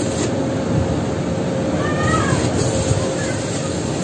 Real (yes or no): yes